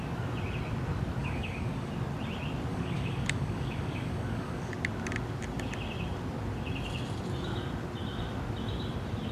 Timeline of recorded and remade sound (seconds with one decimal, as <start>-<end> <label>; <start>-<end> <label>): 0.0-1.2 recorded; 1.2-1.9 remade; 1.9-2.7 recorded; 2.7-4.7 remade; 4.7-9.3 recorded